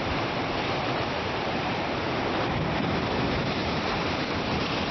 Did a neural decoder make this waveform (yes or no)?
yes